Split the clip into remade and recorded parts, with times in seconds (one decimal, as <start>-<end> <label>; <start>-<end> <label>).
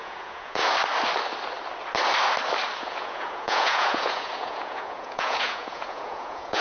0.0-0.6 remade; 0.6-2.8 recorded; 2.8-6.6 remade